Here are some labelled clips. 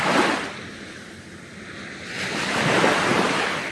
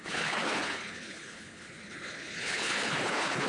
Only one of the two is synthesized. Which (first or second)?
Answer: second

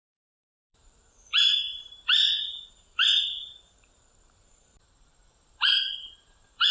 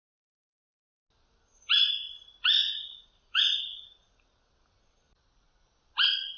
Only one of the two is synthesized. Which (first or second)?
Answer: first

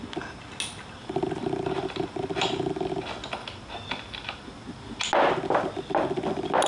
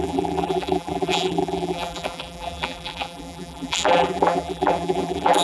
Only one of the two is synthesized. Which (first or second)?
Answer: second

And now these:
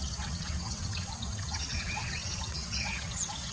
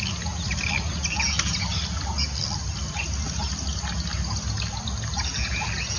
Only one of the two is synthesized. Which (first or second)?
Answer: first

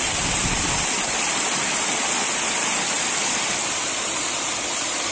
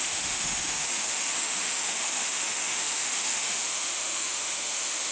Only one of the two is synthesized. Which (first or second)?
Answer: second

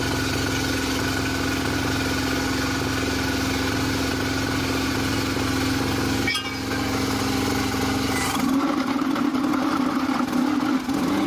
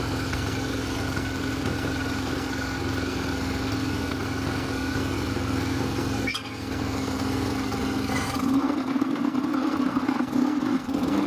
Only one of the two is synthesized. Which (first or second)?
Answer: second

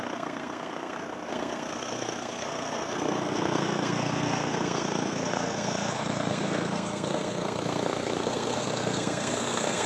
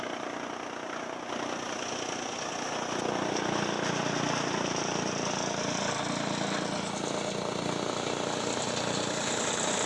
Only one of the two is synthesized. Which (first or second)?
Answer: first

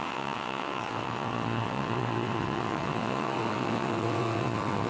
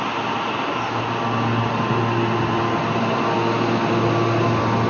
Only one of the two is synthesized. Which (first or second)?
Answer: first